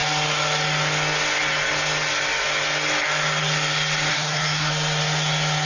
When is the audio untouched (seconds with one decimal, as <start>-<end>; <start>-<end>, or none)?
0.0-4.1; 4.7-5.7